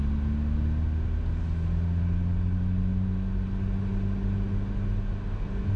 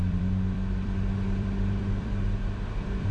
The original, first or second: first